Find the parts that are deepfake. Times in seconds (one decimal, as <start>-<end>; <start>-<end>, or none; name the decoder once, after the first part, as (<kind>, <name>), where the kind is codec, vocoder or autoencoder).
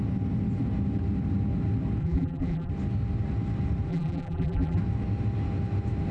2.0-2.7 (vocoder, BigVGAN v2); 3.9-4.8